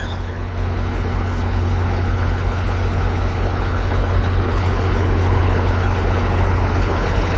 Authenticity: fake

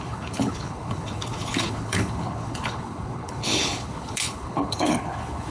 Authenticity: fake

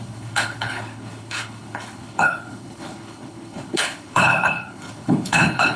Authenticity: fake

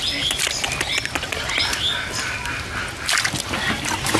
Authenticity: real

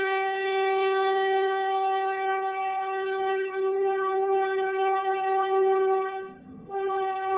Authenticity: fake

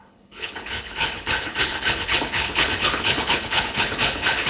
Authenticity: fake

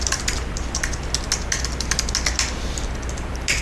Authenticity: real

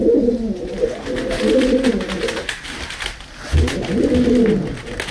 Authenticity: real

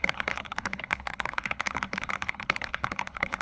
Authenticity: fake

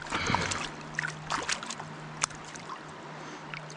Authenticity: real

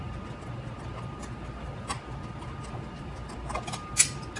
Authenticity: real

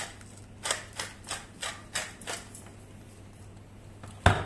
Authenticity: real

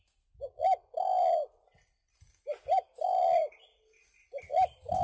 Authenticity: real